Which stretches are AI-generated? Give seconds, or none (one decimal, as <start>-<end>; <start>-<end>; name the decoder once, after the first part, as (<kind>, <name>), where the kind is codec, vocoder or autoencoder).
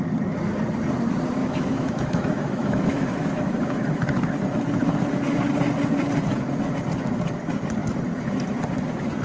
1.4-3.9 (autoencoder, DAC-VAE)